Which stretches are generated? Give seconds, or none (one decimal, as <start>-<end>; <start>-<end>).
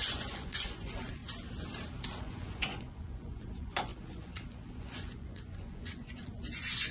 0.0-1.2; 2.2-6.9